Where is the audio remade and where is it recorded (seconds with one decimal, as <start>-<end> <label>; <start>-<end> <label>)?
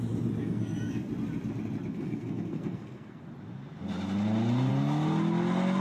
0.0-0.4 recorded; 0.4-1.1 remade; 1.1-1.9 recorded; 1.9-3.2 remade; 3.2-5.8 recorded